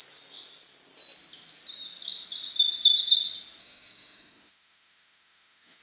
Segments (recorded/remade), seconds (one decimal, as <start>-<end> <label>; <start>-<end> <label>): 0.0-3.6 recorded; 3.6-5.8 remade